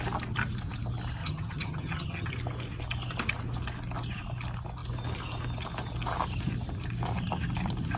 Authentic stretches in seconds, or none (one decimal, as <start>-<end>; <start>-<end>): 0.0-1.2; 2.3-8.0